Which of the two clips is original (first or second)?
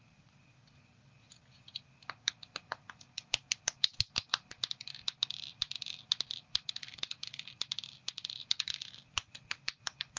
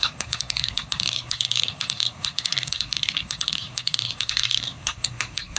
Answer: first